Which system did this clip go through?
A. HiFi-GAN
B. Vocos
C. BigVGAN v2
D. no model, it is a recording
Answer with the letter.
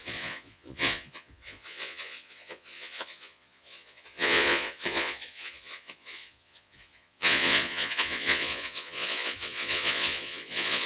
B